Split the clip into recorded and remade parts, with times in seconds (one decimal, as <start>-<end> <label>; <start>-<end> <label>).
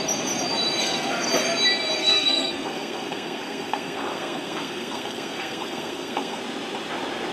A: 0.0-0.8 recorded; 0.8-1.3 remade; 1.3-2.0 recorded; 2.0-6.4 remade; 6.4-7.3 recorded